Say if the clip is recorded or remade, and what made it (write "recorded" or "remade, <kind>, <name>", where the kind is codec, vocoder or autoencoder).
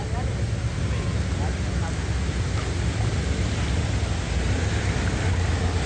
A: recorded